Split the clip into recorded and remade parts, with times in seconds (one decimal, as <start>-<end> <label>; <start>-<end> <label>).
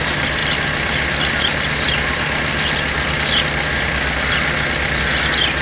0.0-5.6 recorded